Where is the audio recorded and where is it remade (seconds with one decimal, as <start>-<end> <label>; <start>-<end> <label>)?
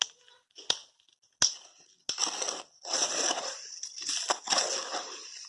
0.0-5.5 recorded